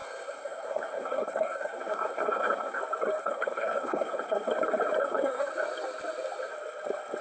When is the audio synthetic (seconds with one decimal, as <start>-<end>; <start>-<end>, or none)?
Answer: 0.0-2.8; 3.2-4.5; 5.0-5.5